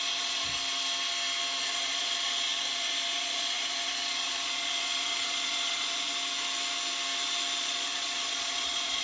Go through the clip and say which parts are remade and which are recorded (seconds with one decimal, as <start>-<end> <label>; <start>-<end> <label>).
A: 0.0-0.6 remade; 0.6-1.6 recorded; 1.6-6.1 remade; 6.1-7.6 recorded; 7.6-9.0 remade